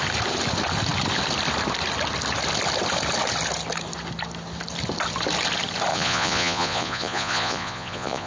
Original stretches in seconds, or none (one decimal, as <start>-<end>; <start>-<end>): 0.0-5.9